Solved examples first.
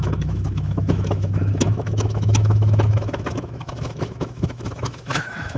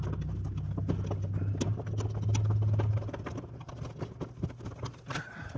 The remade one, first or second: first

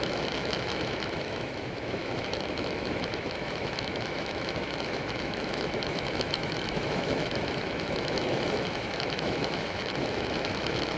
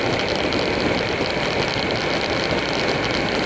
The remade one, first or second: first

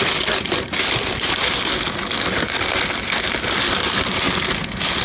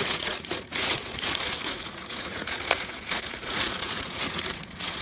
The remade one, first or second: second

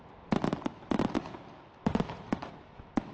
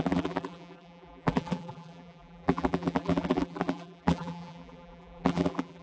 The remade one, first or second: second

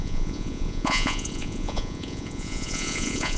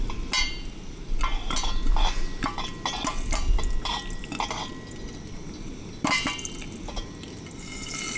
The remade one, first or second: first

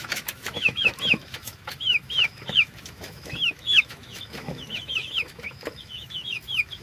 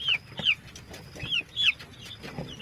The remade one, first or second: first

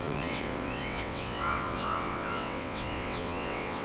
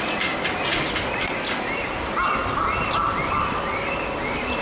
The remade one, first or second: first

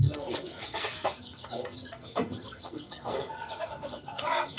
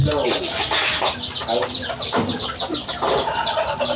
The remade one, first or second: first